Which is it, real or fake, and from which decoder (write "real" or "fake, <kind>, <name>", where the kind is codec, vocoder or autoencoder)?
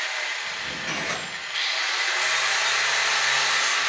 real